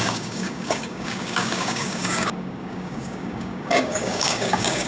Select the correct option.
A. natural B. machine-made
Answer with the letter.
B